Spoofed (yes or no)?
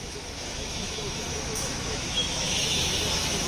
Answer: yes